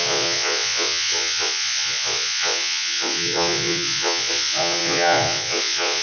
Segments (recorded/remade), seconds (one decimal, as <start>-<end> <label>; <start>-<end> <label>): 0.0-6.0 remade